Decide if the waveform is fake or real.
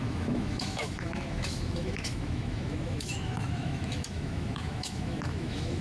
fake